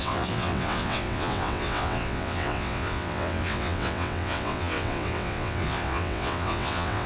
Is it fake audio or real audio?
fake